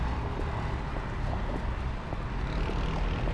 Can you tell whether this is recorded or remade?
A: recorded